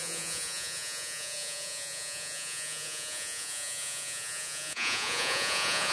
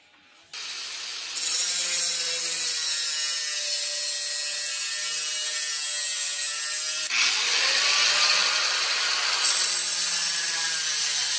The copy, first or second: first